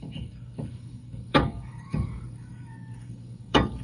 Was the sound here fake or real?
fake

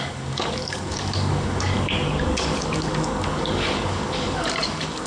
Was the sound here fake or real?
fake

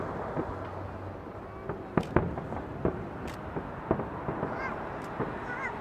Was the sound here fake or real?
real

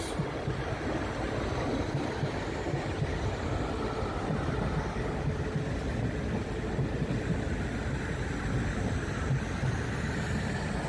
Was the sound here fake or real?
fake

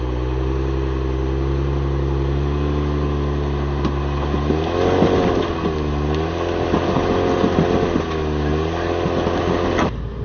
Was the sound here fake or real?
real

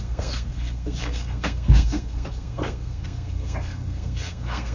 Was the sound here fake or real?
fake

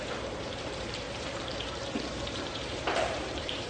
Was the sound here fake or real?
fake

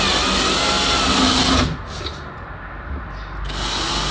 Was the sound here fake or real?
real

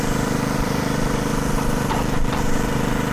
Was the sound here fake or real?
fake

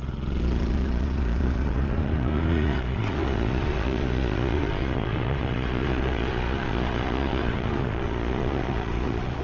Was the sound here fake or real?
fake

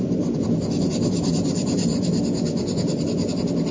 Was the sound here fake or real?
real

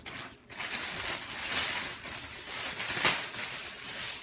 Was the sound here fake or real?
real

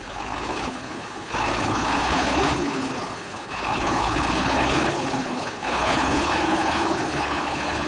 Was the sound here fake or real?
fake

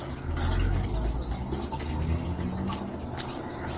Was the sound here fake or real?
real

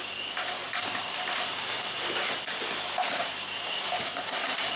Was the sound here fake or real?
fake